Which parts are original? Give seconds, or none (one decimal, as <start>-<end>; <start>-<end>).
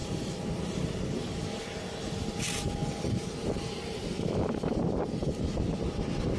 1.2-2.8; 5.5-6.4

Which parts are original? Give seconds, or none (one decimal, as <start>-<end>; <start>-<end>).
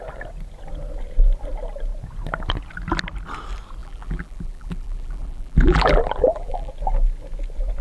0.0-3.8; 6.7-7.8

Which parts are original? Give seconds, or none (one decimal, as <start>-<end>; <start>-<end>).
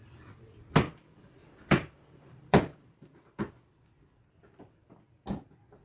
0.0-1.4; 3.4-5.8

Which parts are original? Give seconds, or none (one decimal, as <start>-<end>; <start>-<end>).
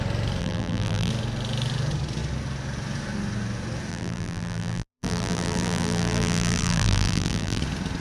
0.0-0.4; 1.1-3.9; 7.6-8.0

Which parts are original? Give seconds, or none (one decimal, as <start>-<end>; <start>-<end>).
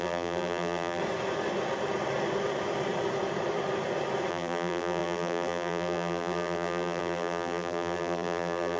1.0-4.3